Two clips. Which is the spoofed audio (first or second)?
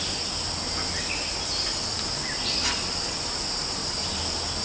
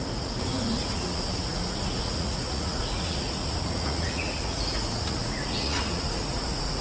second